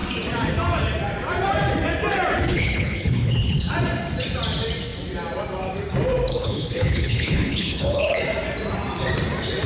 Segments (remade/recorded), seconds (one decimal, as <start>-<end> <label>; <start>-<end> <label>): 0.0-2.5 recorded; 2.5-3.7 remade; 3.7-6.3 recorded; 6.3-8.2 remade; 8.2-9.7 recorded